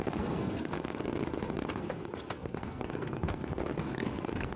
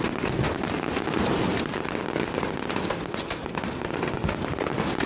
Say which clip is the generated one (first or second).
first